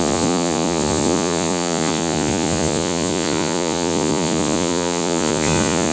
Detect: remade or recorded remade